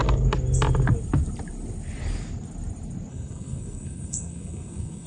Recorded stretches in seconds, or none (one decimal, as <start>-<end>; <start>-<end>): 0.0-3.1